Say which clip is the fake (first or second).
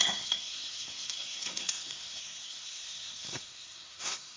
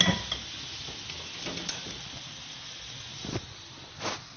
first